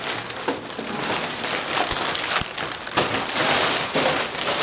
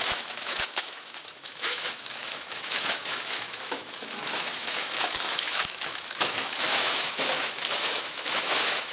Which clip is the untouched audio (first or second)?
first